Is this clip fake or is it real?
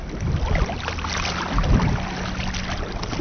real